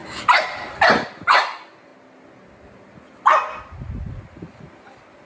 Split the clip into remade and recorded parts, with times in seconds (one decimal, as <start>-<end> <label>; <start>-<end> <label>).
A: 0.0-0.5 recorded; 0.5-1.9 remade; 1.9-4.1 recorded; 4.1-5.3 remade